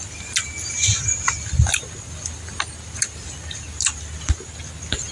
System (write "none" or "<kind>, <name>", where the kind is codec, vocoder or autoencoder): none